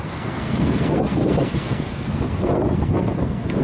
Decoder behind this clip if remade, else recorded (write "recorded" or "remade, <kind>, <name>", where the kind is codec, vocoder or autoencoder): remade, codec, SNAC